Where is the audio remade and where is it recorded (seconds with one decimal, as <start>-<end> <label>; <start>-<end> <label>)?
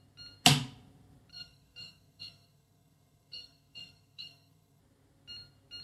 0.0-1.3 recorded; 1.3-4.8 remade; 4.8-5.8 recorded